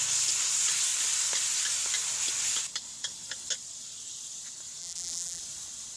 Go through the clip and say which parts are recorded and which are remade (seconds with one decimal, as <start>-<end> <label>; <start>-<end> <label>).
0.0-4.8 recorded; 4.8-5.4 remade; 5.4-6.0 recorded